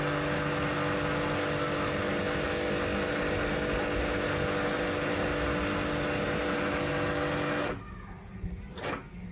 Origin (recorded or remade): recorded